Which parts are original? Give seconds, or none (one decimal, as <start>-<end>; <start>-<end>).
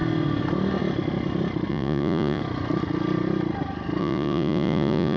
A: 0.0-1.7; 2.4-4.0